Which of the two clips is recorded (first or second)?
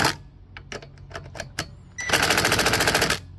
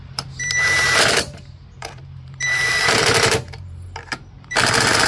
first